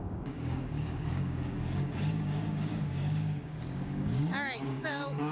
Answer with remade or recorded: remade